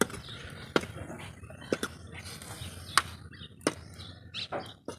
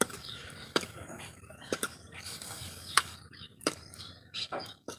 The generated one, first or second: second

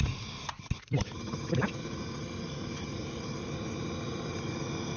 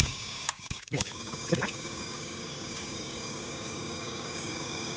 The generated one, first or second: second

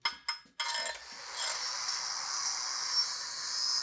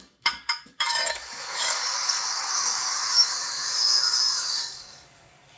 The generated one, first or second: second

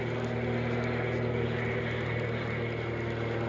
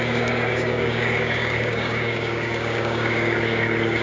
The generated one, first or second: second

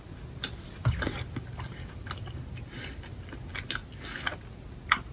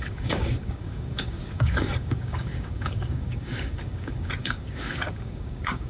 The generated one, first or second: second